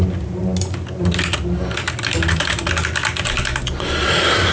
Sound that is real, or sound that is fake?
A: real